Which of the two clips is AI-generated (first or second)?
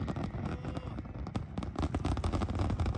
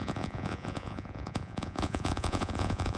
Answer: second